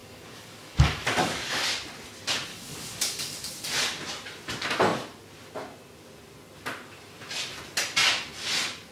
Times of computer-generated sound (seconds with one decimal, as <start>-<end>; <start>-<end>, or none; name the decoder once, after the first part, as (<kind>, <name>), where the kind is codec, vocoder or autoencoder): 0.0-1.6 (codec, DAC); 2.5-3.5